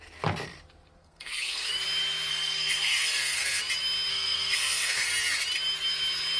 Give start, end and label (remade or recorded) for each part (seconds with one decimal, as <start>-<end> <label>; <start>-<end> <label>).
0.0-1.0 recorded; 1.0-1.7 remade; 1.7-2.3 recorded; 2.3-3.6 remade; 3.6-4.1 recorded; 4.1-5.1 remade; 5.1-6.4 recorded